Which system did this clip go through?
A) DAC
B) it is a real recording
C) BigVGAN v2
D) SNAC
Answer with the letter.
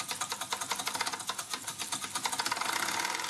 B